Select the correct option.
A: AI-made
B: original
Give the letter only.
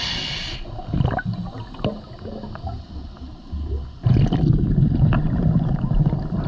B